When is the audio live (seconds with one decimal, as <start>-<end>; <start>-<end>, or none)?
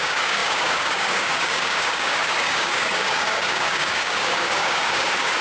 none